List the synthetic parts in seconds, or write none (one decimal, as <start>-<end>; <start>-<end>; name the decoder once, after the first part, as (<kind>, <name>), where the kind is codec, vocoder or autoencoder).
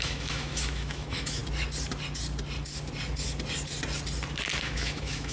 0.0-1.4 (autoencoder, DAC-VAE); 4.6-5.3